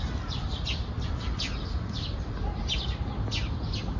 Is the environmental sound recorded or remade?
recorded